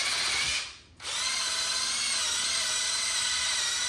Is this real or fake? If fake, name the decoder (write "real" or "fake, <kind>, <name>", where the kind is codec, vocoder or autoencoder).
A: real